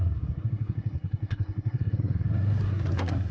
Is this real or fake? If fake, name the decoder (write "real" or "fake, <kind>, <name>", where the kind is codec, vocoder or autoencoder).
fake, codec, SNAC